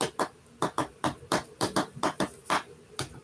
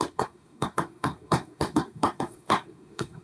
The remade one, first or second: second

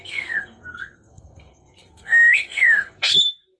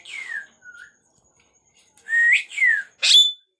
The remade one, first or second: first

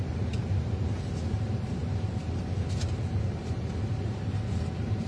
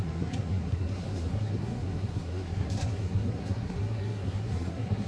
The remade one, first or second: second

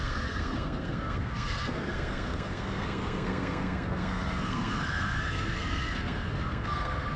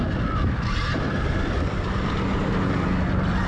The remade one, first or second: first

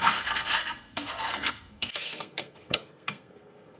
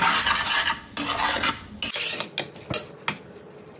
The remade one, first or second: first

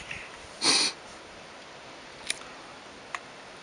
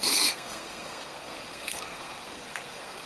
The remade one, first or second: second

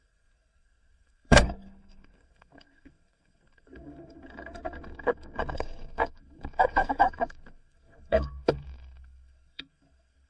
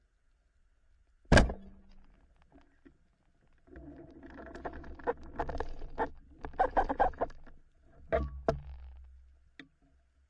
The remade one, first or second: first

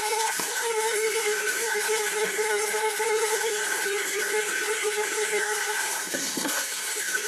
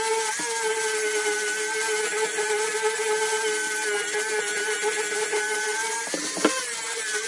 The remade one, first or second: first